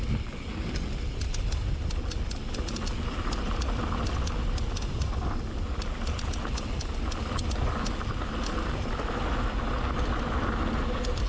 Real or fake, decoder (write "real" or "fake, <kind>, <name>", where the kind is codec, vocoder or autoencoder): real